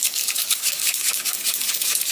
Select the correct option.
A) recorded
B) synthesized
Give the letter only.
B